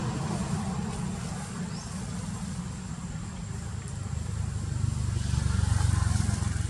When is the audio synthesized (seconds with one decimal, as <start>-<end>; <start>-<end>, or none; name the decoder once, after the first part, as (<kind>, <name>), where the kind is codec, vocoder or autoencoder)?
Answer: none